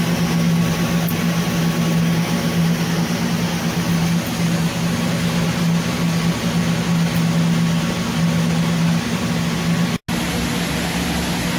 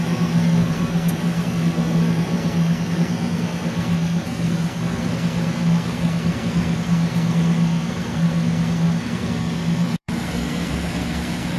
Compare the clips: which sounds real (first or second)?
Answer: first